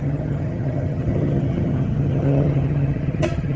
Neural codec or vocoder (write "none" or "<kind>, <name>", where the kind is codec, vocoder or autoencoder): vocoder, HiFi-GAN